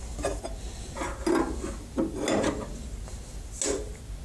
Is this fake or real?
real